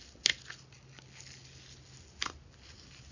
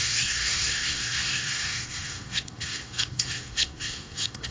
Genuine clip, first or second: first